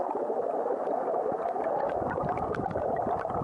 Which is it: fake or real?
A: real